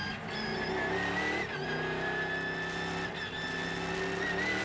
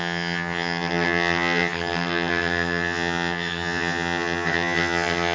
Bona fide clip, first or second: first